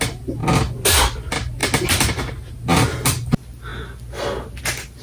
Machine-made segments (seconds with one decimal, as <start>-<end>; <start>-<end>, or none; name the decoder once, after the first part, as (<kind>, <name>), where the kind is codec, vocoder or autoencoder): none

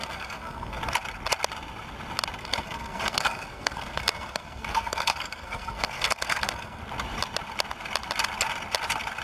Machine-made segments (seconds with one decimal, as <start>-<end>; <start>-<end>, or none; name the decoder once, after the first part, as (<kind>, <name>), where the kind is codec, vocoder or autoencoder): 0.0-0.8 (codec, SNAC); 2.4-6.8

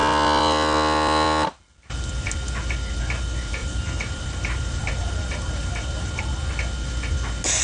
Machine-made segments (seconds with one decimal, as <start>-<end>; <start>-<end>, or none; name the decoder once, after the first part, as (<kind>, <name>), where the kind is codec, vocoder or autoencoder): 3.6-6.2 (vocoder, BigVGAN v2)

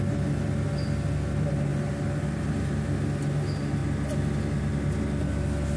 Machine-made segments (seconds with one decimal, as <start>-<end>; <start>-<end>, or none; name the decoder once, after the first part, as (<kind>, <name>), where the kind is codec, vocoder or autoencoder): none

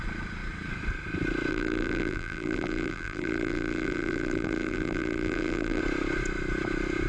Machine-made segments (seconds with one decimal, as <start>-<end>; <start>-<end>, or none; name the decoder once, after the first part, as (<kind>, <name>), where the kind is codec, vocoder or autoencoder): 1.5-5.8 (vocoder, BigVGAN v2)

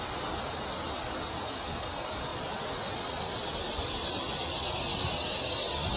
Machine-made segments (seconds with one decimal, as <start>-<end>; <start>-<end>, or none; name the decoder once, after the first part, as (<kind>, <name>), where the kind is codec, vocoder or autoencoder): none

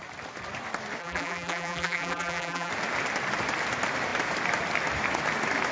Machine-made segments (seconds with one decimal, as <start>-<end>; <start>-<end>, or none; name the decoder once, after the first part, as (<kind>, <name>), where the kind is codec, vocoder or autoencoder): 1.0-2.7 (vocoder, BigVGAN v2)

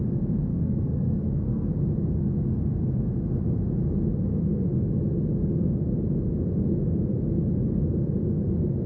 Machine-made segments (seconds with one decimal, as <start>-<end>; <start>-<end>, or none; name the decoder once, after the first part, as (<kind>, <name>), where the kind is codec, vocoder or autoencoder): 0.5-1.7 (codec, SNAC)